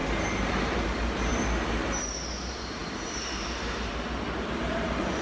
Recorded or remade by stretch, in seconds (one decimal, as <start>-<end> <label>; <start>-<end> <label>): 0.0-0.5 recorded; 0.5-1.3 remade; 1.3-2.0 recorded; 2.0-5.2 remade